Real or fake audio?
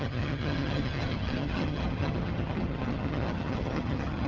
fake